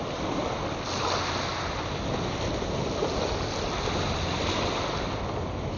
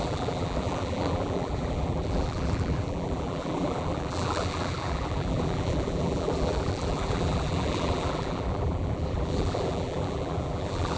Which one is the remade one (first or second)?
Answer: second